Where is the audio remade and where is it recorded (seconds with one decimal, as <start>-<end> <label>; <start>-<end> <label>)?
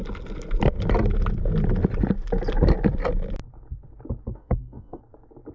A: 0.0-4.3 recorded; 4.3-5.0 remade; 5.0-5.5 recorded